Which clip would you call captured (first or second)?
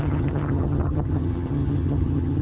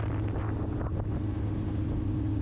second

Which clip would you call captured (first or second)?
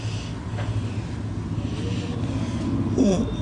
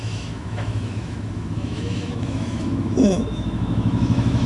first